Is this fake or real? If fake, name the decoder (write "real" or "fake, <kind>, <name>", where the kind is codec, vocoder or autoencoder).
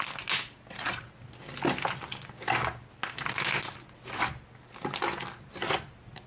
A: real